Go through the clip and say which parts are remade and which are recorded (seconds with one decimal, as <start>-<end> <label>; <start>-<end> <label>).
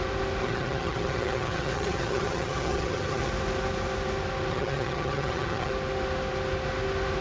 0.0-0.4 recorded; 0.4-3.3 remade; 3.3-4.5 recorded; 4.5-5.7 remade; 5.7-7.2 recorded